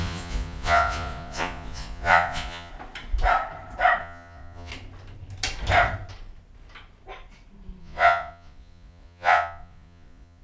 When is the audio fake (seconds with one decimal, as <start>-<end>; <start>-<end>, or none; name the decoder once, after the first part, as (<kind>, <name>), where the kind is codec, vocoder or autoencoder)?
0.0-2.7 (vocoder, Vocos); 4.0-4.7; 7.8-10.4